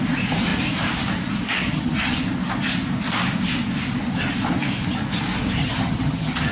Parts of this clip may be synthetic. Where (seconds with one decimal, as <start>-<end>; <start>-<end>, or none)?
1.6-2.2; 5.6-6.5